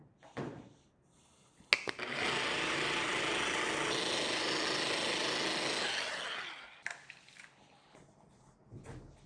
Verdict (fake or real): real